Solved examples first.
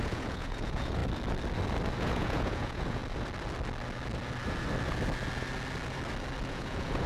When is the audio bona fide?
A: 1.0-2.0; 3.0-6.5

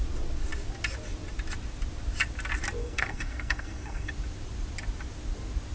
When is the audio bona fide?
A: 0.0-2.8; 4.1-5.7

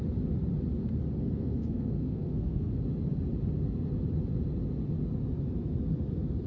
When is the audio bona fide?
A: 0.0-1.2; 2.7-6.5